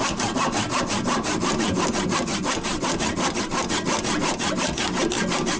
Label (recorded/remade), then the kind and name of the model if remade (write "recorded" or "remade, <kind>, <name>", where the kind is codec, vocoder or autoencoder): recorded